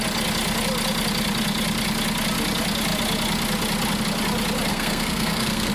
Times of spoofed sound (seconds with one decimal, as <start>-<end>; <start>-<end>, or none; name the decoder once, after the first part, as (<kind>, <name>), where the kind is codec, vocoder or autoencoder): 4.7-5.7 (codec, SNAC)